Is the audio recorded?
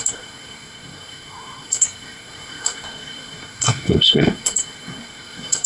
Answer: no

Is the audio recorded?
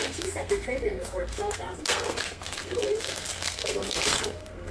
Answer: no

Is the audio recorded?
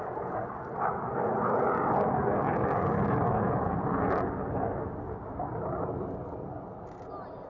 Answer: yes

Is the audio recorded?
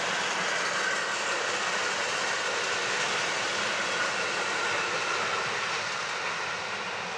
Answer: yes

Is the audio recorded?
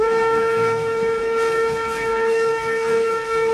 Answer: no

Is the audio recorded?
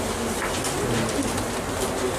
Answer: yes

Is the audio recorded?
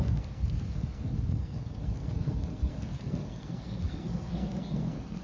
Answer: no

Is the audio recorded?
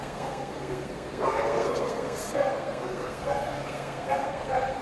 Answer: no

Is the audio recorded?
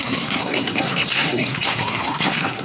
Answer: no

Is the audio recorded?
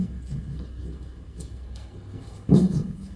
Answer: no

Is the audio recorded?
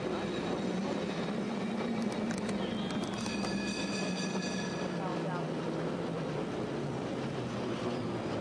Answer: yes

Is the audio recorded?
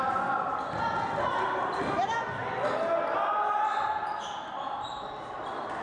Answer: yes